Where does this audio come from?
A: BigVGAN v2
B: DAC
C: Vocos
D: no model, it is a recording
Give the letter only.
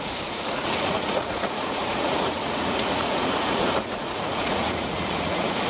C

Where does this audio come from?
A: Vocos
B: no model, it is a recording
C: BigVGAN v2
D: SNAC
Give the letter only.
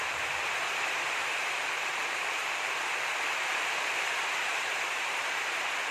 C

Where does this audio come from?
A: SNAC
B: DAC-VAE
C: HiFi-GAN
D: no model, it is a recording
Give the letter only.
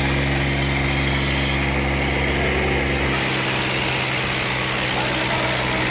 D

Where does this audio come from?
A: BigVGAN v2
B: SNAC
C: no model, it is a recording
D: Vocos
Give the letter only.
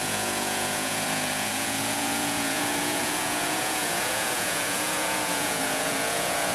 D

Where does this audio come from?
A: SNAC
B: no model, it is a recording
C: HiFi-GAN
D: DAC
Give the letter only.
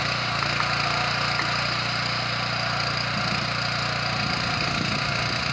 B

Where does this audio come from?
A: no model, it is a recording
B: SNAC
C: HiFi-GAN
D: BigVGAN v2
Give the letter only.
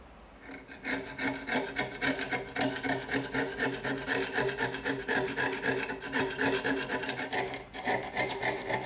A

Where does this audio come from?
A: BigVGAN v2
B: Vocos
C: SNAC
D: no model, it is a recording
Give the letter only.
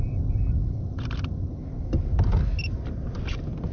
D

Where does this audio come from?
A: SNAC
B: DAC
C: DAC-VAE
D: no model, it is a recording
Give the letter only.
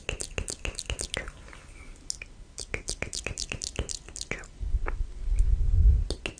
D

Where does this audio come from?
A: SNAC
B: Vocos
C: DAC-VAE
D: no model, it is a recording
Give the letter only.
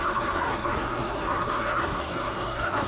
A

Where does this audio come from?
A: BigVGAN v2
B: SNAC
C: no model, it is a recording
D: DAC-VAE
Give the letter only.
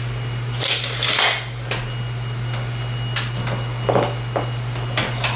C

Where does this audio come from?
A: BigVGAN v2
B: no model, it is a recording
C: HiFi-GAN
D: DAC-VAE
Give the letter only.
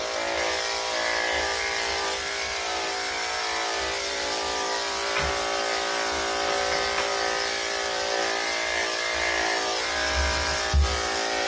B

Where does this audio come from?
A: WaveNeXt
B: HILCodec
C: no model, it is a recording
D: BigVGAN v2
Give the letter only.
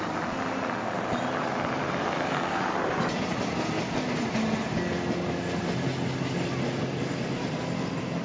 C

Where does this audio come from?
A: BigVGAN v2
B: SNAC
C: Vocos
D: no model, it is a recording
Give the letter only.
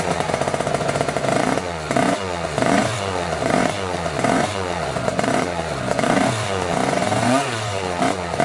C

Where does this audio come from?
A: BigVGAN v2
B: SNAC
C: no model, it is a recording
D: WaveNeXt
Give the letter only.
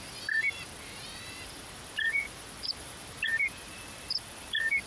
A